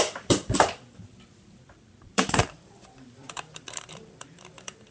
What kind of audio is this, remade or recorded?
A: remade